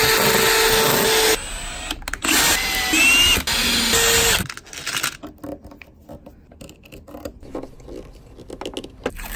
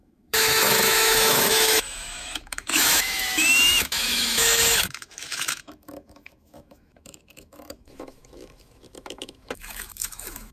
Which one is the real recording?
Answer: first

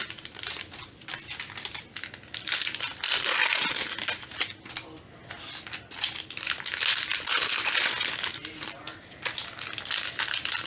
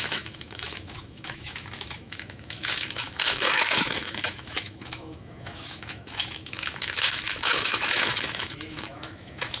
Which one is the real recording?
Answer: first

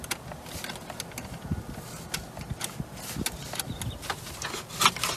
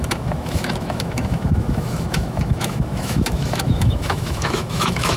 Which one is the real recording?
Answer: first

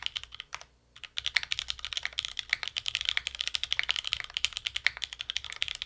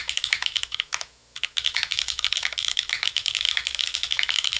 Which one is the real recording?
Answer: first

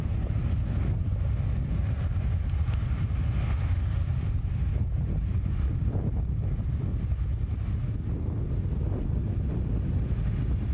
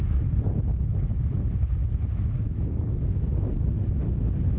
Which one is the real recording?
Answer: first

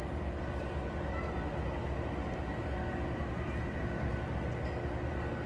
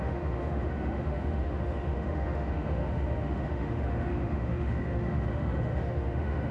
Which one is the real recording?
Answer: first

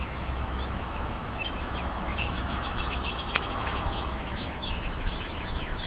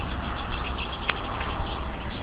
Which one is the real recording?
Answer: second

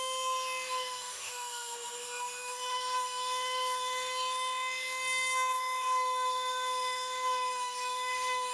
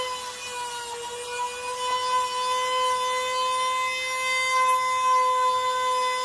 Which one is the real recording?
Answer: second